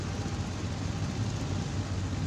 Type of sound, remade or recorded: recorded